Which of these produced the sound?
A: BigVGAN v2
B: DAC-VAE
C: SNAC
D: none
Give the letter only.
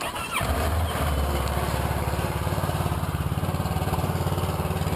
A